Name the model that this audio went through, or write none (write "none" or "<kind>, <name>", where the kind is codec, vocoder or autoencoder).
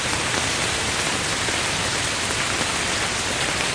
none